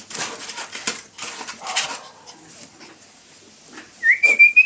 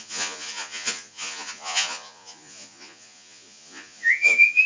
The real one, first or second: first